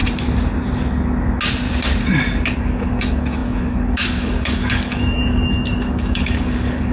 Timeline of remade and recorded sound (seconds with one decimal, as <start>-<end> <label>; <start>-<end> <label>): 0.0-2.6 recorded; 2.6-6.9 remade